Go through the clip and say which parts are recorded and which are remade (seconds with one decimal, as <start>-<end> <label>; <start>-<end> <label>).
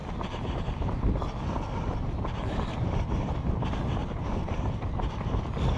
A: 0.0-1.1 remade; 1.1-4.0 recorded; 4.0-4.6 remade; 4.6-5.8 recorded